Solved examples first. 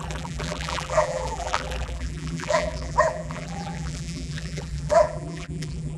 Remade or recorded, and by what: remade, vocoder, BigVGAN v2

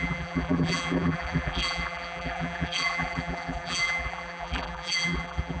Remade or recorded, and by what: remade, vocoder, BigVGAN v2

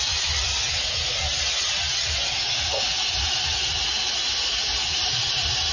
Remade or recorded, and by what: recorded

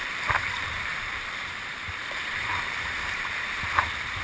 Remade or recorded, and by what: remade, vocoder, BigVGAN v2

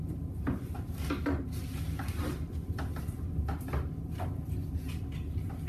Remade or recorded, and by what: recorded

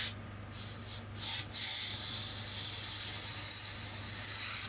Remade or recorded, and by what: recorded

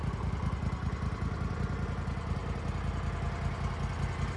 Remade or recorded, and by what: recorded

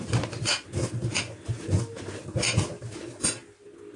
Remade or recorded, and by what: recorded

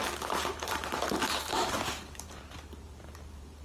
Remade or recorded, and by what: remade, vocoder, BigVGAN v2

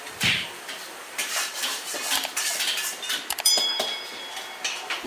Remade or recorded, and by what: remade, vocoder, BigVGAN v2